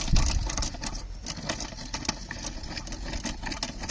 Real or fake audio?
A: real